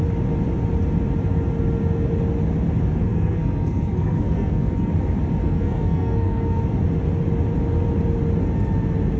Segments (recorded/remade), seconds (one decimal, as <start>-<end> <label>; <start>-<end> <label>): 0.0-3.0 recorded; 3.0-4.9 remade; 4.9-5.4 recorded; 5.4-6.6 remade; 6.6-9.2 recorded